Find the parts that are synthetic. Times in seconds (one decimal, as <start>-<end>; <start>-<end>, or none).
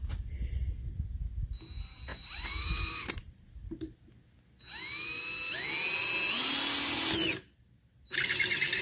2.1-4.1